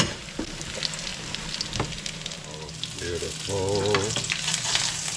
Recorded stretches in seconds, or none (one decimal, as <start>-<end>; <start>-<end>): 0.0-5.2